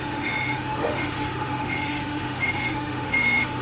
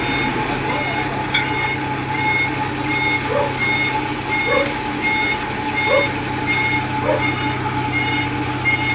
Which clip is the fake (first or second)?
first